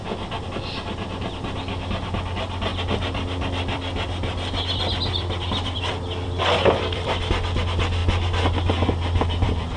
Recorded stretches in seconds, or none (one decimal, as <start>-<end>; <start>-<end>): 0.0-2.7; 7.3-9.8